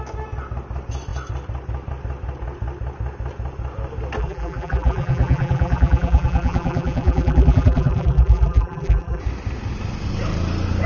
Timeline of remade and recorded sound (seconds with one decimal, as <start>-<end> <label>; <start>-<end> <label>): 0.0-4.2 recorded; 4.2-9.2 remade; 9.2-10.9 recorded